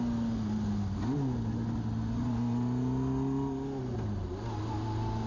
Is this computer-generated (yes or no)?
no